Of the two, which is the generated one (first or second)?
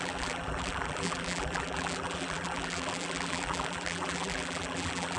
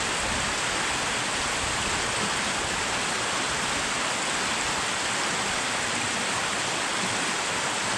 first